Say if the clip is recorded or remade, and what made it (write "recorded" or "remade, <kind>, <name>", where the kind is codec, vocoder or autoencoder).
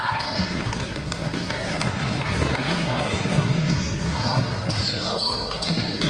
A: remade, codec, SNAC